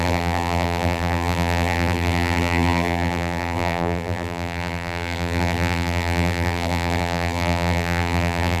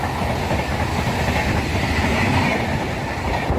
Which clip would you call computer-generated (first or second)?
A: first